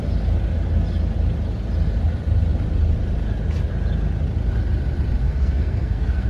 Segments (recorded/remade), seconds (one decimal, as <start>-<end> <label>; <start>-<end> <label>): 0.0-5.2 recorded; 5.2-6.3 remade